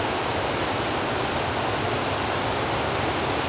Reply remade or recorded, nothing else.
recorded